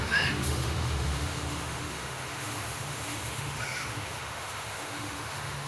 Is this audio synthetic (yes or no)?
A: yes